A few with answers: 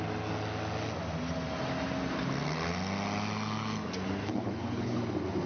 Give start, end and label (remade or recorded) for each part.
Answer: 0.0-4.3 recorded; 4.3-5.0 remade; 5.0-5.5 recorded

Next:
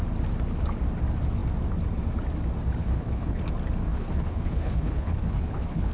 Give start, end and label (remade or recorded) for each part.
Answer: 0.0-2.8 recorded; 2.8-3.4 remade; 3.4-3.9 recorded; 3.9-5.9 remade